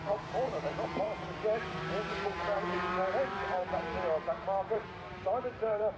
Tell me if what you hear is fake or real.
fake